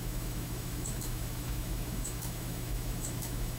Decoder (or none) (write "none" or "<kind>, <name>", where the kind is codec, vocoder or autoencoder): autoencoder, DAC-VAE